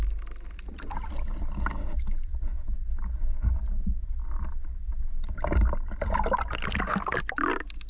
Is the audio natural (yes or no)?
yes